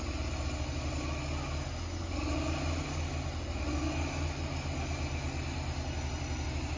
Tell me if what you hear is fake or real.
real